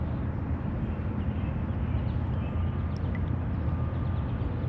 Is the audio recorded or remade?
recorded